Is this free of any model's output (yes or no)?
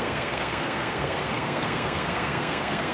no